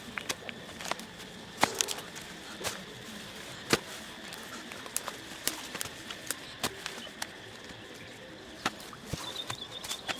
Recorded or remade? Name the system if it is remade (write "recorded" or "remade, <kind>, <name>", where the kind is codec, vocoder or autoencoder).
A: recorded